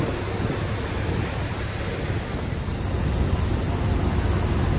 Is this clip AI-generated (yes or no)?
no